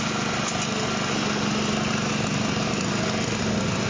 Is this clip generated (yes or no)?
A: no